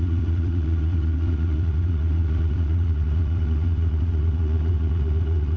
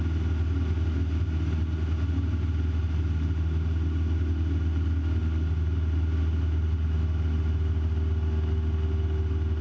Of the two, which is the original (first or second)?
second